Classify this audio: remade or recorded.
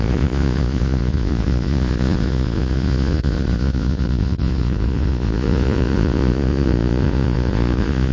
remade